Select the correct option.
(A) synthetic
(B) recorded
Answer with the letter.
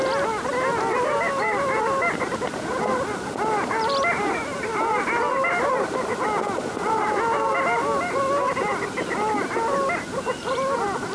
B